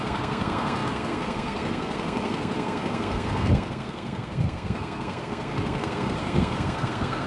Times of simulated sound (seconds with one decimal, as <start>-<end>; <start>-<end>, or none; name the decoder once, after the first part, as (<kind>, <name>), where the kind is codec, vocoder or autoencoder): 0.0-7.3 (codec, SNAC)